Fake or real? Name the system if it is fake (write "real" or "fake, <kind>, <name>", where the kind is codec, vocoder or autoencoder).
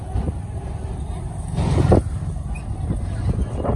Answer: real